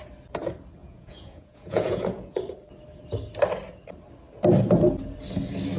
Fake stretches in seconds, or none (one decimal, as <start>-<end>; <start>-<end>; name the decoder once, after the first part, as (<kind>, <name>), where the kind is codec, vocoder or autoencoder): 0.8-2.4 (vocoder, Vocos)